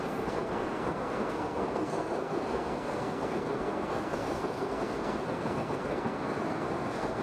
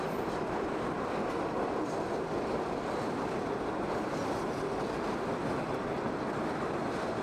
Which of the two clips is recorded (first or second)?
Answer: second